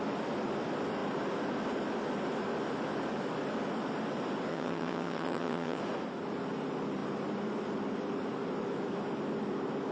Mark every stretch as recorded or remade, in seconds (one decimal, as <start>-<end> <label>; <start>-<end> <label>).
0.0-4.5 recorded; 4.5-5.8 remade; 5.8-9.9 recorded

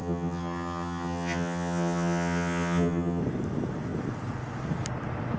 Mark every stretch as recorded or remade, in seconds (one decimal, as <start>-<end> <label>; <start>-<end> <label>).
0.0-3.2 remade; 3.2-5.4 recorded